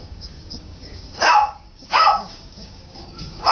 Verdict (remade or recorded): remade